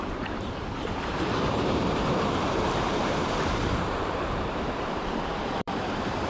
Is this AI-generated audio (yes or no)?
yes